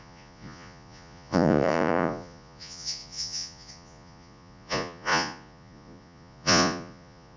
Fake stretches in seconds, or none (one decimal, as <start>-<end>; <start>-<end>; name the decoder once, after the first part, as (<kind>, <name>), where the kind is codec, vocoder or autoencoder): 0.0-7.4 (vocoder, Vocos)